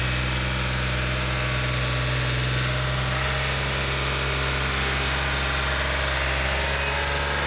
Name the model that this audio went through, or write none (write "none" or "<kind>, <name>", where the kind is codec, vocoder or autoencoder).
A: none